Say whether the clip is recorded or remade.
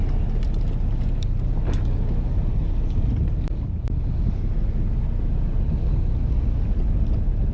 recorded